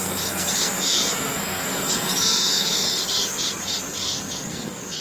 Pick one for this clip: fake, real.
fake